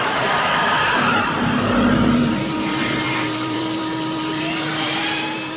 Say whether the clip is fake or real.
fake